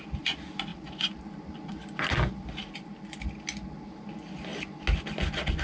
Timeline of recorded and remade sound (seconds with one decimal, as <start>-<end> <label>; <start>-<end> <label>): 0.0-5.6 recorded